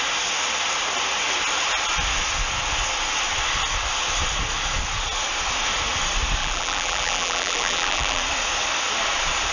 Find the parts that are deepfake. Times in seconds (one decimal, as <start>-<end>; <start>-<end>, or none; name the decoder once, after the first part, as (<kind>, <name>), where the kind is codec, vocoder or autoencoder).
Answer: 6.4-8.2 (vocoder, BigVGAN v2)

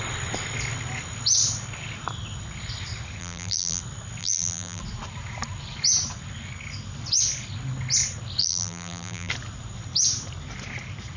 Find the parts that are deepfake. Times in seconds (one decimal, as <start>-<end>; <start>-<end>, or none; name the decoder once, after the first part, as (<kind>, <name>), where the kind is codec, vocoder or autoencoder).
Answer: 3.2-3.8 (vocoder, BigVGAN v2); 4.2-4.8; 8.4-9.3